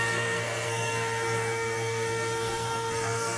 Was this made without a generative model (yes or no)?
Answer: no